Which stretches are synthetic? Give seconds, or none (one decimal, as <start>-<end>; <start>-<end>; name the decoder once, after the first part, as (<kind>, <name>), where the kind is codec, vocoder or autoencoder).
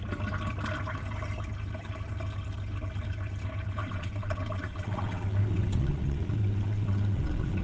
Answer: 3.8-7.6 (vocoder, WaveNeXt)